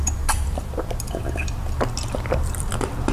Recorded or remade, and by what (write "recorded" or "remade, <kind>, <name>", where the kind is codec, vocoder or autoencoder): remade, vocoder, BigVGAN v2